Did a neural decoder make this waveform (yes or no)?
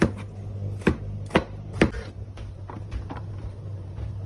yes